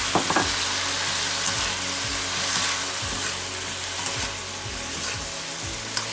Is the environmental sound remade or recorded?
recorded